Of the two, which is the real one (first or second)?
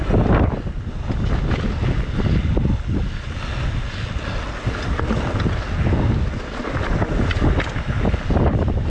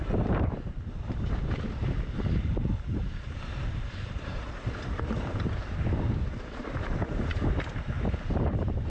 first